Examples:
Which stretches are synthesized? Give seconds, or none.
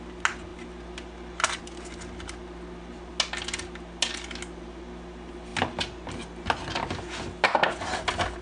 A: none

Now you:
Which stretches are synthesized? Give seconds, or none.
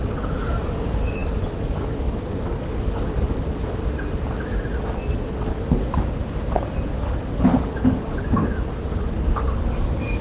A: 0.0-3.8 (codec, DAC); 7.3-8.4; 8.9-10.2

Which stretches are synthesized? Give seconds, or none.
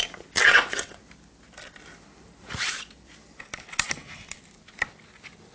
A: 0.4-1.0 (vocoder, WaveNeXt)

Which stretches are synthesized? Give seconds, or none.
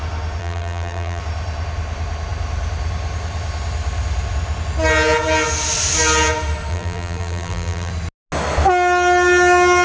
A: 0.4-1.2 (vocoder, BigVGAN v2); 6.7-7.9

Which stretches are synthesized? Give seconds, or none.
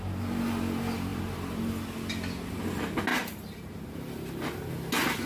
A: 1.1-1.7 (vocoder, BigVGAN v2); 3.1-4.7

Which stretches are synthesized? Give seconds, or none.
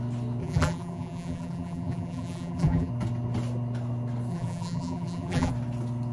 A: 0.4-2.9 (vocoder, BigVGAN v2); 4.3-5.5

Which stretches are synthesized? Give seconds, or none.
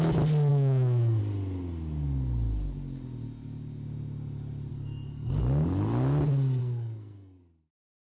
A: 0.5-1.2 (codec, SNAC); 4.7-5.4; 6.6-7.4